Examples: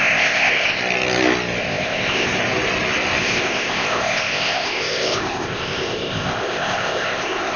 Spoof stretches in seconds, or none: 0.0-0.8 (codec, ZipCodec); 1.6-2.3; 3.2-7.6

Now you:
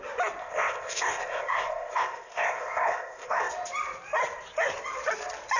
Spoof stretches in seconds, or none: 0.4-3.5 (codec, ZipCodec)

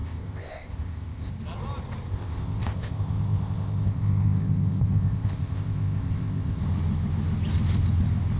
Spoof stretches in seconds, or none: 0.0-1.3 (codec, ZipCodec); 2.1-6.6

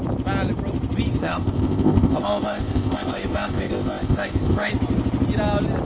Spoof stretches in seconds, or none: 1.2-4.7 (codec, ZipCodec)

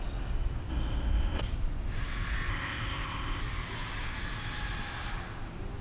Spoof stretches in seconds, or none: 0.7-1.4 (codec, ZipCodec); 2.5-3.4

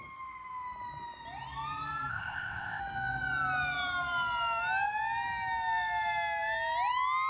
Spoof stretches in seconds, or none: 2.1-2.8 (codec, ZipCodec)